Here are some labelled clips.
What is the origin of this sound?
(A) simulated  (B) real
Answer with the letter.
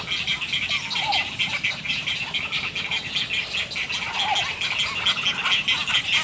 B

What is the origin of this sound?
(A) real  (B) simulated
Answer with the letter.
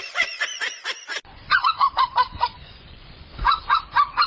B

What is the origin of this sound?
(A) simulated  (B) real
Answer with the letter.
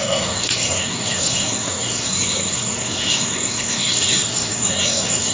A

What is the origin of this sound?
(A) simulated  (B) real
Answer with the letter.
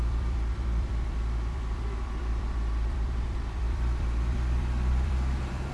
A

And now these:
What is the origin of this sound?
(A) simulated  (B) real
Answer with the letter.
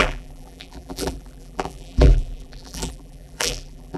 A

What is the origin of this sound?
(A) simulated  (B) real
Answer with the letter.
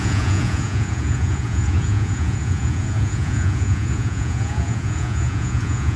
A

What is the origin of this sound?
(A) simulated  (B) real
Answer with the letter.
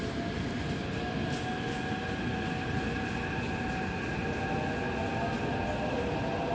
B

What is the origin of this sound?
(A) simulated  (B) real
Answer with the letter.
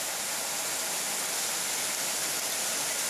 B